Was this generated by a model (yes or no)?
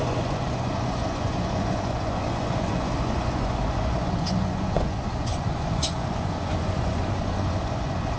yes